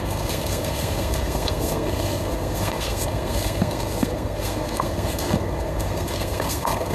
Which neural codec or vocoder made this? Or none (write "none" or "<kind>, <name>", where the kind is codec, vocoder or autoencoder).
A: codec, SNAC